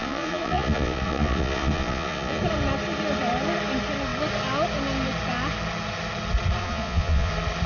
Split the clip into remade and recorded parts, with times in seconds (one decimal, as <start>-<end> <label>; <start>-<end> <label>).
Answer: 0.0-2.4 remade; 2.4-6.6 recorded; 6.6-7.3 remade; 7.3-7.7 recorded